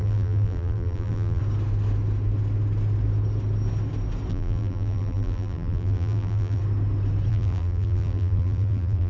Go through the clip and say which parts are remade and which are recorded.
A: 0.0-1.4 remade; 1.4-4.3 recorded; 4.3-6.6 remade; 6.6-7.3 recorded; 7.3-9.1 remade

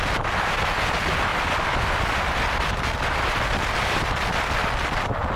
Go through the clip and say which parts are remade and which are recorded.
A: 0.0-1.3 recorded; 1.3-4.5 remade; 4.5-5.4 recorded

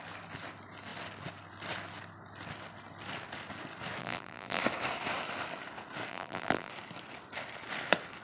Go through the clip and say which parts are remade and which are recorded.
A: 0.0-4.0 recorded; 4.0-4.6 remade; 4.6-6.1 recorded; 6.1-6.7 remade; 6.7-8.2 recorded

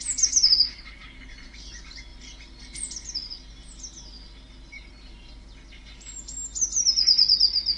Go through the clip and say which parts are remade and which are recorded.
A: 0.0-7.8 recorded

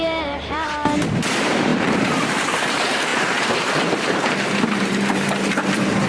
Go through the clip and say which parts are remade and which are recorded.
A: 0.0-6.1 remade